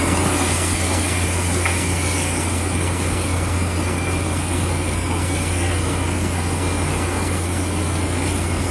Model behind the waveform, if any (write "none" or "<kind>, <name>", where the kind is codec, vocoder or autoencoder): codec, SNAC